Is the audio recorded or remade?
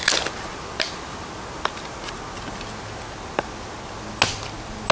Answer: recorded